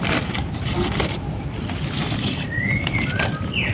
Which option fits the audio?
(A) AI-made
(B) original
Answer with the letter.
A